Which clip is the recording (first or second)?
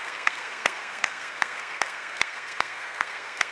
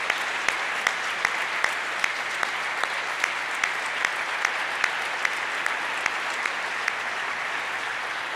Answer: second